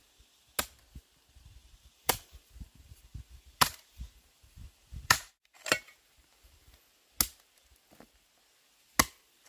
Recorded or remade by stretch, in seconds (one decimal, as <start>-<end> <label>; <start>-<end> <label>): 0.0-1.6 recorded; 1.6-6.8 remade; 6.8-9.5 recorded